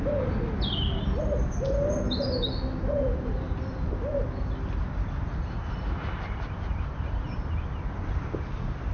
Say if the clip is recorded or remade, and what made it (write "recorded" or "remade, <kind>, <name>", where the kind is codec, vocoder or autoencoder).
recorded